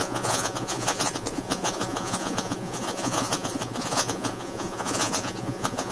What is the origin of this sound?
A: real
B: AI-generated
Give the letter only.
B